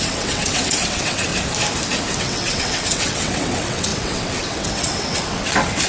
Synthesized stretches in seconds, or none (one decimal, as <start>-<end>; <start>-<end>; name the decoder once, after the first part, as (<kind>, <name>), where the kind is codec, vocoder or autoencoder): 0.0-1.3 (vocoder, WaveNeXt); 2.2-5.9

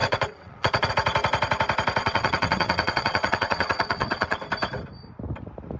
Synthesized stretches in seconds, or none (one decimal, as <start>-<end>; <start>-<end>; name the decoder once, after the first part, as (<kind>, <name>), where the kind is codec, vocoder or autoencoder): 0.0-0.9 (vocoder, WaveNeXt); 2.0-4.4

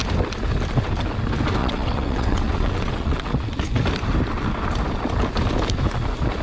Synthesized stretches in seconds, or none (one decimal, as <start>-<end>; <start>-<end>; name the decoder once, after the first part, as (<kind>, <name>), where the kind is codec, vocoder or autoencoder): 1.6-3.5 (vocoder, WaveNeXt)

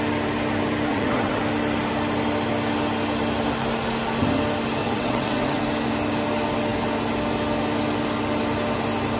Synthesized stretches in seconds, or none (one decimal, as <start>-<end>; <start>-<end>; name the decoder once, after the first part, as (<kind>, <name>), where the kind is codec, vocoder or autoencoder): 0.9-1.4 (vocoder, WaveNeXt); 4.8-5.6